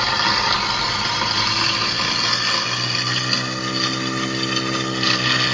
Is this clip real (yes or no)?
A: yes